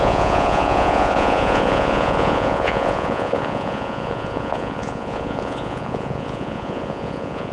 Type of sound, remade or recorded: remade